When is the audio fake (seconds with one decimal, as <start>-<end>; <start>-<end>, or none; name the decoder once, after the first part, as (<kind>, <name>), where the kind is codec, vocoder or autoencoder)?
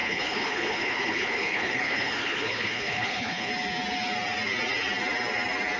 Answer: 0.0-3.5 (codec, HILCodec)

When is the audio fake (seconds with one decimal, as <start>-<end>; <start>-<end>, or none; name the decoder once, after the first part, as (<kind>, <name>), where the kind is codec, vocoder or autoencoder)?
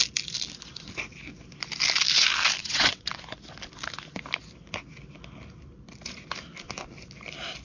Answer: 2.6-3.2 (vocoder, WaveNeXt)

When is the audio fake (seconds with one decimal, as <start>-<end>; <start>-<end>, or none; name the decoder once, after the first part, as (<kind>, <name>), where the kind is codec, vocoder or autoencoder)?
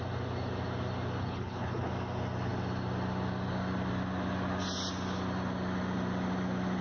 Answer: 1.2-1.9 (codec, HILCodec)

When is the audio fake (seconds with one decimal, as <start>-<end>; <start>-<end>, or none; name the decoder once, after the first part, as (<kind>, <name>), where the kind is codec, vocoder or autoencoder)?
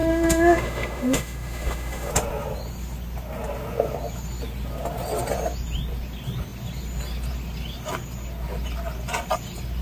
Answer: 0.0-2.1 (autoencoder, DAC-VAE)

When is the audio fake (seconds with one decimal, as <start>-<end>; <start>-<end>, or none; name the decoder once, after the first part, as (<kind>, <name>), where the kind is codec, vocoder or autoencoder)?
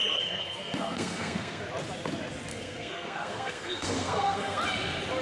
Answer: 0.0-1.6 (codec, SNAC); 2.5-4.6